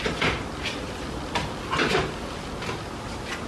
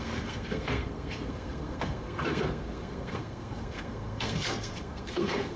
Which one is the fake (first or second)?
second